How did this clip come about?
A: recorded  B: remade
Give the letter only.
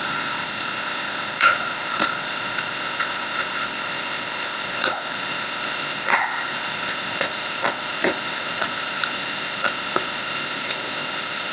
B